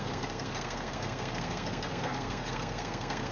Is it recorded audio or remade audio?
remade